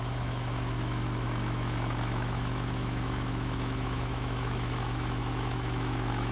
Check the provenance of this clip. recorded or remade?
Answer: remade